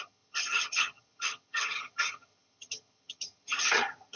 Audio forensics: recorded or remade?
remade